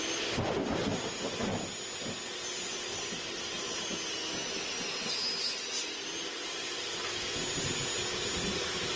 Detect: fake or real real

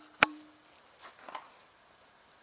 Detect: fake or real fake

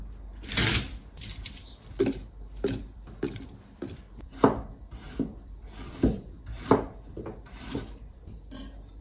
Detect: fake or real fake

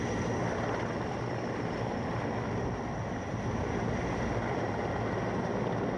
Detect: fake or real real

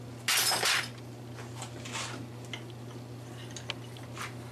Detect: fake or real real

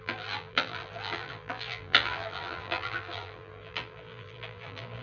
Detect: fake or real fake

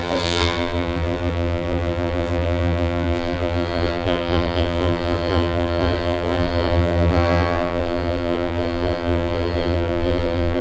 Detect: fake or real fake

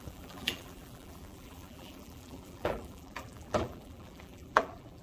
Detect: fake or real fake